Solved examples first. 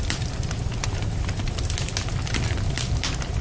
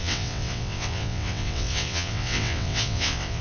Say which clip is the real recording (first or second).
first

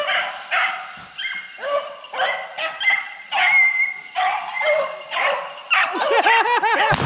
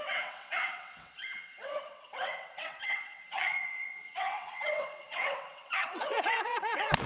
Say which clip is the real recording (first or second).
first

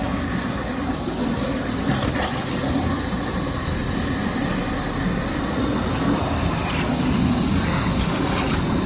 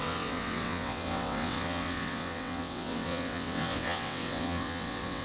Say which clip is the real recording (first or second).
first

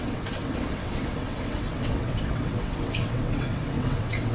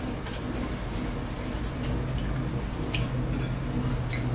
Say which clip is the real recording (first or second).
second